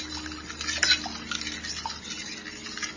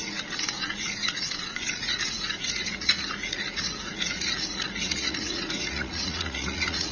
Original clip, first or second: first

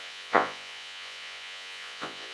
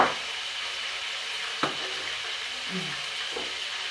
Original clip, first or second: second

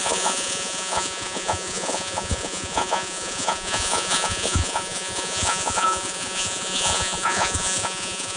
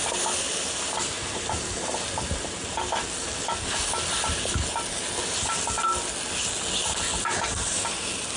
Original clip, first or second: second